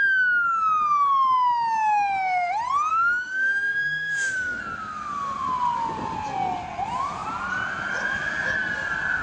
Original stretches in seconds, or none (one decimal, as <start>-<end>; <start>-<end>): 0.0-2.9; 4.6-9.2